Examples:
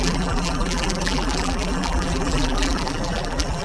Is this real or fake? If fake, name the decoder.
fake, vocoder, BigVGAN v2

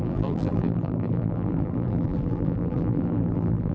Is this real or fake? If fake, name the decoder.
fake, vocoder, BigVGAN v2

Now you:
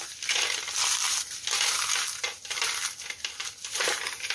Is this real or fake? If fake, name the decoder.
fake, vocoder, BigVGAN v2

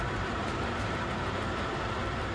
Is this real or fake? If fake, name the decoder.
fake, vocoder, BigVGAN v2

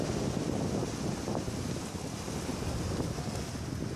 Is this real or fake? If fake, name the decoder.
real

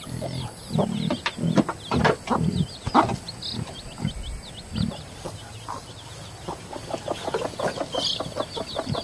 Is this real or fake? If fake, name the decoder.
real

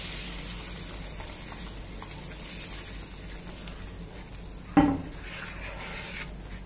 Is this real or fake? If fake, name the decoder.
real